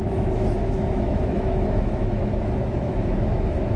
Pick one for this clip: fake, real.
fake